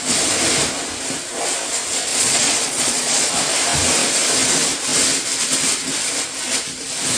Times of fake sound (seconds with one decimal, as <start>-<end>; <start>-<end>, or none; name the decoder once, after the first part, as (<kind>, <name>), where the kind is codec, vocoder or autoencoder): 2.1-3.3 (vocoder, Vocos)